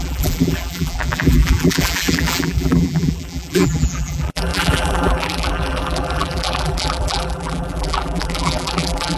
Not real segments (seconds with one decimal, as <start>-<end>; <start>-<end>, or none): 0.0-9.2

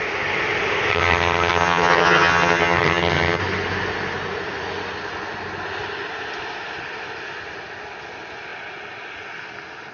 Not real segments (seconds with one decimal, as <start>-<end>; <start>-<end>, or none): 0.9-3.4

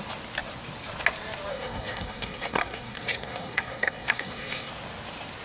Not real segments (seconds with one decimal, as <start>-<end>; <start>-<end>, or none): 1.5-4.7

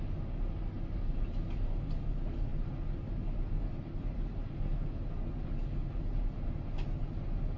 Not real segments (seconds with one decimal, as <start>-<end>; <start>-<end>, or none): none

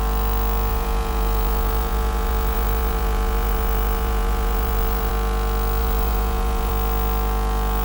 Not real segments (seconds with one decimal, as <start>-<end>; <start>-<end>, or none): 0.7-5.1; 5.8-6.7

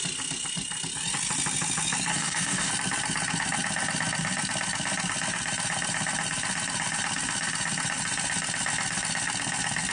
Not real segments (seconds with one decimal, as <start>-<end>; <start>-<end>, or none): 2.1-2.7

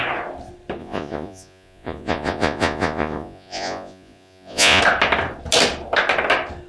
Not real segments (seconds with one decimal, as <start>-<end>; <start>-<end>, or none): 0.8-4.8

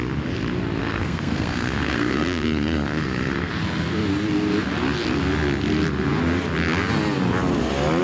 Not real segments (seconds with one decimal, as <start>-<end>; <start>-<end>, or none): 0.8-3.5